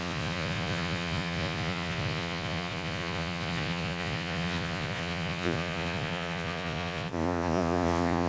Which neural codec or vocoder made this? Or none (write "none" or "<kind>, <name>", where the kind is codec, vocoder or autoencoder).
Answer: vocoder, Vocos